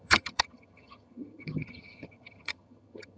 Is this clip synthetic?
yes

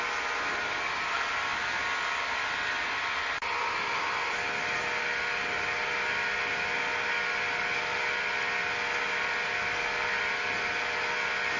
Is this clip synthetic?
no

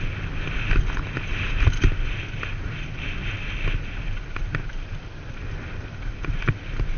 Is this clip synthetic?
no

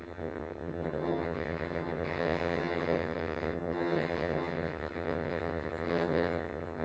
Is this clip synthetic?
yes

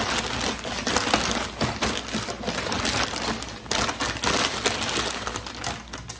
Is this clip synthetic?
no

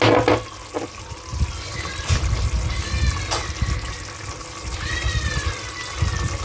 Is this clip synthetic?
no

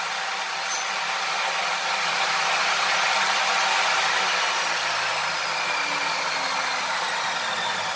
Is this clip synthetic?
no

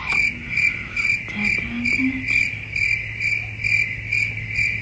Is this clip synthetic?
no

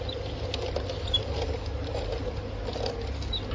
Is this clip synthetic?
no